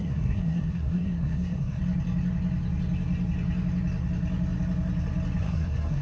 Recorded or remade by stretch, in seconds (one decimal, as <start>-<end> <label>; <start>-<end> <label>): 0.0-1.8 remade; 1.8-5.4 recorded; 5.4-6.0 remade